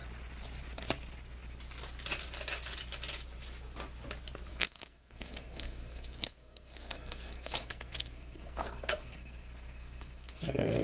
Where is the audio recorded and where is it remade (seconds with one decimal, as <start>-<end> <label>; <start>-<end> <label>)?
0.0-4.5 recorded; 4.5-10.8 remade

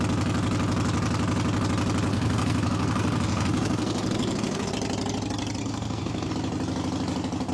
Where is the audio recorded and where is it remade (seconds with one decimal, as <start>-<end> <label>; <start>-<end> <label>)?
0.0-2.1 recorded; 2.1-4.7 remade; 4.7-5.6 recorded; 5.6-6.3 remade; 6.3-7.5 recorded

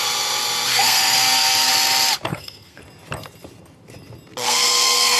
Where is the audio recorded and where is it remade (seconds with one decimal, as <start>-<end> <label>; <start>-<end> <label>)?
0.0-0.7 recorded; 0.7-1.7 remade; 1.7-2.3 recorded; 2.3-2.8 remade; 2.8-4.4 recorded; 4.4-5.2 remade

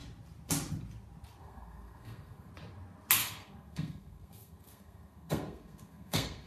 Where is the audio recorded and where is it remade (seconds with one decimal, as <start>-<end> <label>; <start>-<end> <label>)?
0.0-1.4 recorded; 1.4-2.5 remade; 2.5-3.2 recorded; 3.2-6.5 remade